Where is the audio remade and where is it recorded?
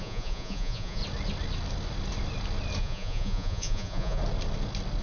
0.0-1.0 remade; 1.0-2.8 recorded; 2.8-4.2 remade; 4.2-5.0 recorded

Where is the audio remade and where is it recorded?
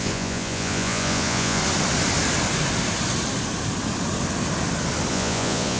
0.0-1.6 remade; 1.6-5.1 recorded; 5.1-5.8 remade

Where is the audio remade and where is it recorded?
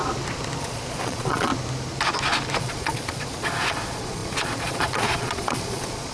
0.0-0.6 recorded; 0.6-1.5 remade; 1.5-2.6 recorded; 2.6-6.1 remade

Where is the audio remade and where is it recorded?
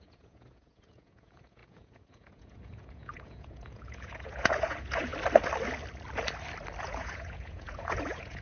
0.0-5.1 remade; 5.1-6.8 recorded; 6.8-8.4 remade